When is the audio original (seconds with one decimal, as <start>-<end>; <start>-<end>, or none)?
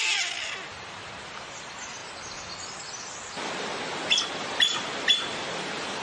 2.0-4.9